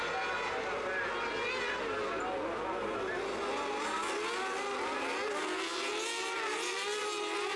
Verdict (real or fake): real